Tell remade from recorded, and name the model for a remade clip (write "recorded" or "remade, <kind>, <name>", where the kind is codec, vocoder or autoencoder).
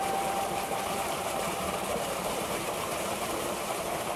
remade, vocoder, BigVGAN v2